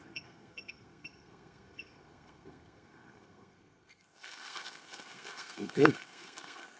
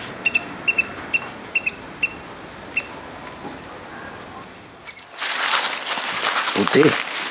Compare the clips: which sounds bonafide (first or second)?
second